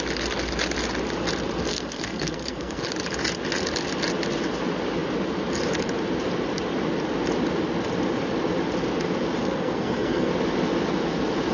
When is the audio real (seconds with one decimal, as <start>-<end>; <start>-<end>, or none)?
0.0-1.7; 2.8-9.4; 10.3-11.5